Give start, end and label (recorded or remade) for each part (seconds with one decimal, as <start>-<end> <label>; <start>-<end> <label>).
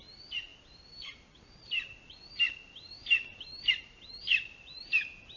0.0-5.4 recorded